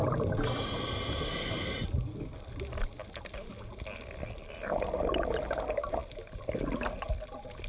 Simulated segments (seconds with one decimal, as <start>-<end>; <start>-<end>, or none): none